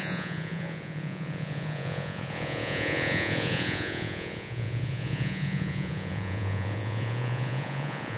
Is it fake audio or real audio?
fake